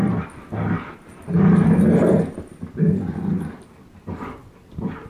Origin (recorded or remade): recorded